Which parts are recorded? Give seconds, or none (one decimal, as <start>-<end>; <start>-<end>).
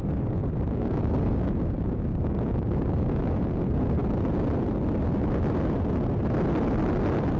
4.0-7.4